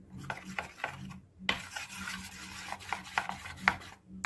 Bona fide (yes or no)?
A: yes